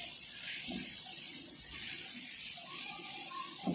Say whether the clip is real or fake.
fake